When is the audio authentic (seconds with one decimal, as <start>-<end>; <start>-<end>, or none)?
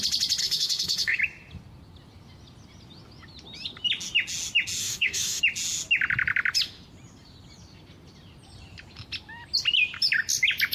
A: 0.0-0.4; 1.2-4.8; 5.4-10.7